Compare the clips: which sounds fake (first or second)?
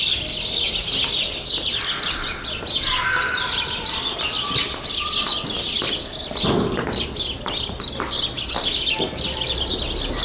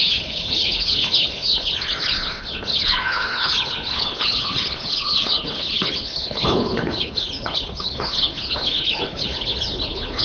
second